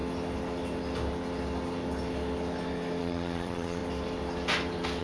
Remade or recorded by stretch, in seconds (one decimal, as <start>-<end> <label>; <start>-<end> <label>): 0.0-3.0 recorded; 3.0-3.8 remade; 3.8-5.0 recorded